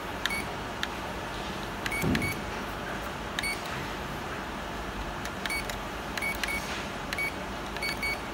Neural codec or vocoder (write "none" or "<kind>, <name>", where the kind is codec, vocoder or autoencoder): vocoder, BigVGAN v2